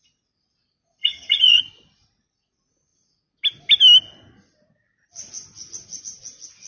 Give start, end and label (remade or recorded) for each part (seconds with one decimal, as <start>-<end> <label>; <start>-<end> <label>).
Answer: 0.0-1.0 recorded; 1.0-1.6 remade; 1.6-6.7 recorded